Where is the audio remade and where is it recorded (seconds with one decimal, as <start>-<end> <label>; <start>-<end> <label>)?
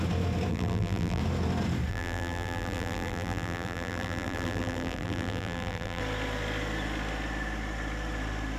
0.0-0.5 recorded; 0.5-1.2 remade; 1.2-1.9 recorded; 1.9-6.0 remade; 6.0-8.6 recorded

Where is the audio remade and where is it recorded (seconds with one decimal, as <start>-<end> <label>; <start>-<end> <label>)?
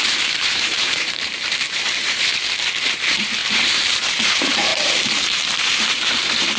0.0-2.3 remade; 2.3-2.9 recorded; 2.9-6.6 remade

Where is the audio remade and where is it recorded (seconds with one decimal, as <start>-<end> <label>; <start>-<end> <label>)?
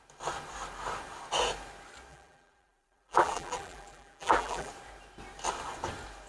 0.0-2.1 recorded; 2.1-4.7 remade; 4.7-6.3 recorded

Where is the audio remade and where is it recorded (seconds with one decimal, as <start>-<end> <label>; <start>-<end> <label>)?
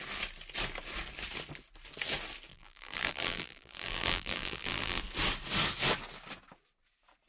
0.0-2.5 recorded; 2.5-5.0 remade; 5.0-7.3 recorded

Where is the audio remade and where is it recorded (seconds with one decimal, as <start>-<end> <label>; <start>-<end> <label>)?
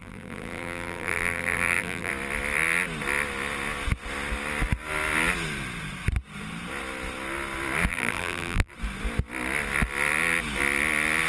0.0-2.1 remade; 2.1-7.9 recorded; 7.9-8.7 remade; 8.7-11.3 recorded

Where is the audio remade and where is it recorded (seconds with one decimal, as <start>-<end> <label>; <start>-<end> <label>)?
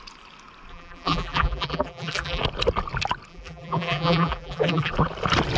0.0-0.7 recorded; 0.7-2.4 remade; 2.4-3.3 recorded; 3.3-4.9 remade; 4.9-5.6 recorded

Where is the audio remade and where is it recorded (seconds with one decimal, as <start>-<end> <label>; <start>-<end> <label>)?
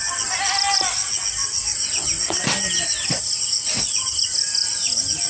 0.0-1.4 recorded; 1.4-3.2 remade; 3.2-5.3 recorded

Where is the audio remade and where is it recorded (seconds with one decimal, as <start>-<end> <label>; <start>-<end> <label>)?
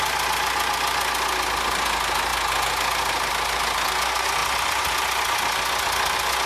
0.0-6.5 recorded